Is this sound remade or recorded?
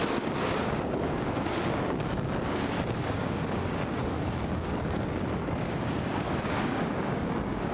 remade